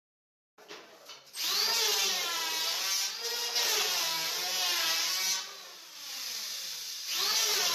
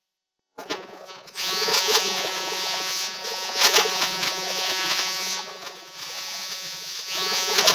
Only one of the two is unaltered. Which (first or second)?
first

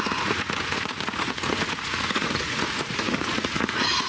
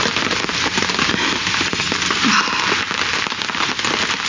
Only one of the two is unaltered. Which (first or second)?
second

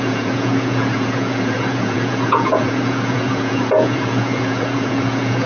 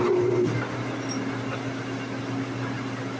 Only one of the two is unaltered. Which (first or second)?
second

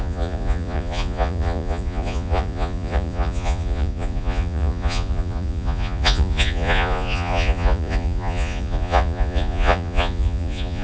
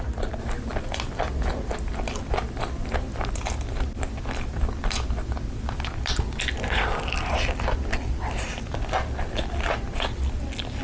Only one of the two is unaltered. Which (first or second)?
second